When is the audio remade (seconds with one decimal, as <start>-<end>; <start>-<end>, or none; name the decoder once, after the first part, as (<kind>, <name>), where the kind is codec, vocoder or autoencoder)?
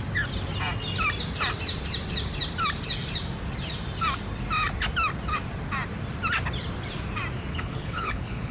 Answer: 7.5-8.5 (codec, HILCodec)